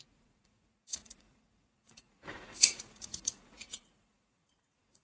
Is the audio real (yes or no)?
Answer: no